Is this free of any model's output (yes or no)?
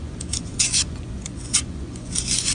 no